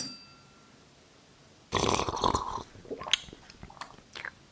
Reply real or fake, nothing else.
real